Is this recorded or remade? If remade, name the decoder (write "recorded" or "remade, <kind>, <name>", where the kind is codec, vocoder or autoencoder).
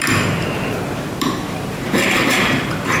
remade, vocoder, BigVGAN v2